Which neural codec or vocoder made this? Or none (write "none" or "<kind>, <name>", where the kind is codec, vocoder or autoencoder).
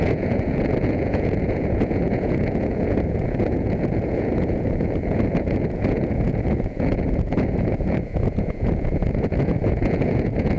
vocoder, Vocos